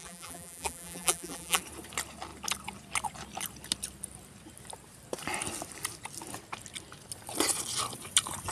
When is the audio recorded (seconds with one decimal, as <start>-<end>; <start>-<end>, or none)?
1.6-8.5